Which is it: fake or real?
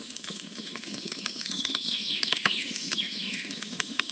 fake